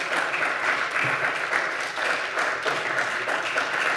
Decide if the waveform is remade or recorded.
recorded